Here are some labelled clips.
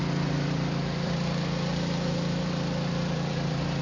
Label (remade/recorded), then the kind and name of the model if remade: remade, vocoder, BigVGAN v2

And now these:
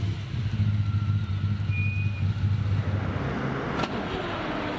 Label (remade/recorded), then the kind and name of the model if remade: recorded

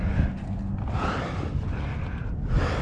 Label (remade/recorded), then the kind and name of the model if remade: recorded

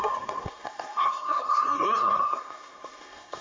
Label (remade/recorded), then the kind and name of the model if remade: remade, codec, SNAC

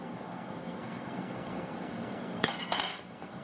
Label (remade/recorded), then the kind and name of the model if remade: remade, codec, SNAC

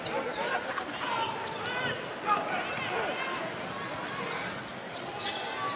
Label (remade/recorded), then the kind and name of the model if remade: recorded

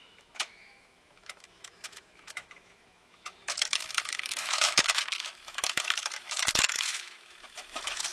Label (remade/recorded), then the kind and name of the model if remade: remade, autoencoder, DAC-VAE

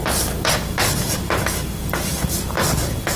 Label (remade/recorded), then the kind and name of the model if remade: remade, vocoder, BigVGAN v2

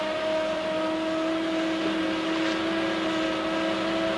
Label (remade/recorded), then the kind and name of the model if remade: recorded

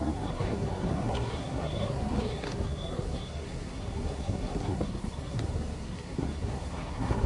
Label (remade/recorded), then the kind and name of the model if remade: remade, codec, SNAC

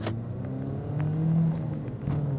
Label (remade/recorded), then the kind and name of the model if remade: recorded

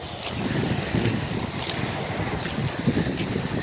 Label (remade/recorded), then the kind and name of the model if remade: recorded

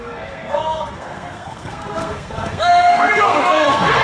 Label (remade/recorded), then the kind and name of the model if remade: remade, codec, SNAC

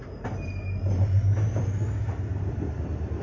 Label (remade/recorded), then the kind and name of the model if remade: recorded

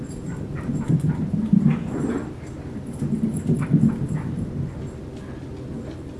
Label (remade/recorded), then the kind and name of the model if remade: recorded